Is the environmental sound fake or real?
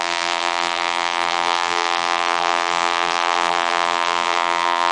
fake